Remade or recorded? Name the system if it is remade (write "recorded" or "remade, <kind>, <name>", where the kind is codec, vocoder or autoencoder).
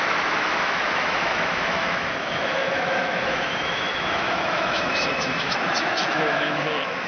remade, autoencoder, DAC-VAE